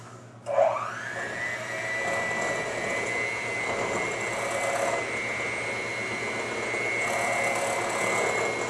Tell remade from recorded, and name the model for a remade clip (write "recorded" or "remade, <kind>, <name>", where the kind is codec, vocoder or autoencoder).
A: recorded